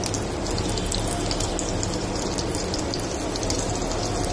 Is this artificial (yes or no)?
no